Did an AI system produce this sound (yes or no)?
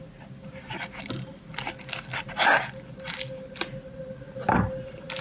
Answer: no